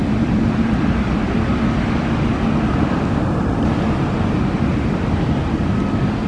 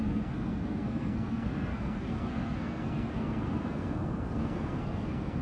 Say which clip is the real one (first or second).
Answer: first